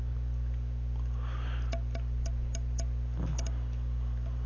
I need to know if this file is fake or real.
real